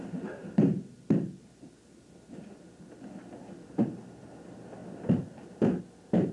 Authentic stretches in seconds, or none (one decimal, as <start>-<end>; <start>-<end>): 0.0-6.3